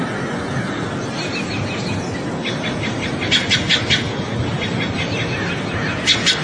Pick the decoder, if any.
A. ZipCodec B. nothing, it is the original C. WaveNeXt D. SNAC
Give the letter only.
B